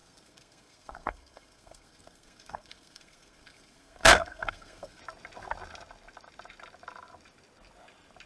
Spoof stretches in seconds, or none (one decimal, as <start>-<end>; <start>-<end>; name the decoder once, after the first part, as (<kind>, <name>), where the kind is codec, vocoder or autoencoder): 0.0-5.0 (codec, SNAC)